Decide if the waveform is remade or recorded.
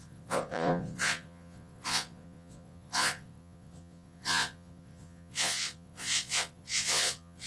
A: remade